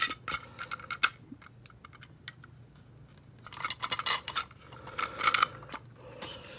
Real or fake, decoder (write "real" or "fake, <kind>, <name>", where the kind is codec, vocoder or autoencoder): real